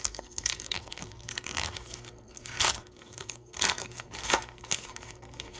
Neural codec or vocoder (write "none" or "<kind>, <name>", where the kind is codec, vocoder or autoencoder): codec, SNAC